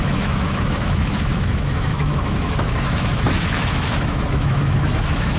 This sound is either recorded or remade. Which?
remade